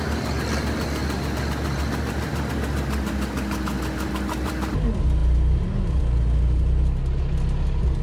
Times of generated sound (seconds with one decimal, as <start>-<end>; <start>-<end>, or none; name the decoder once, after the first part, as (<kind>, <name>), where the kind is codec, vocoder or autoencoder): none